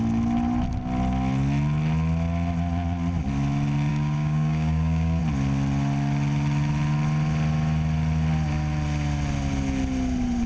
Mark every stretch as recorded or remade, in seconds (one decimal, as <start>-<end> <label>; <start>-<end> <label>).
0.0-3.9 recorded; 3.9-5.2 remade; 5.2-10.5 recorded